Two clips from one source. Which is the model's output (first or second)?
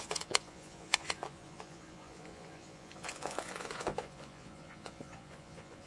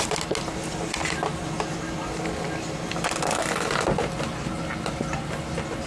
first